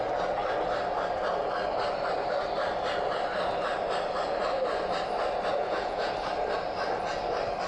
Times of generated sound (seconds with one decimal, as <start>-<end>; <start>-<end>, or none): 5.6-6.1